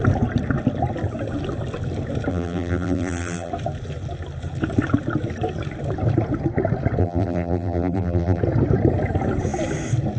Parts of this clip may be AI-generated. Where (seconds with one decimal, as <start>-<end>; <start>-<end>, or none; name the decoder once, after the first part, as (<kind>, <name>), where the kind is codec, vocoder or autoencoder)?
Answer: 2.3-3.5 (vocoder, BigVGAN v2); 7.0-8.4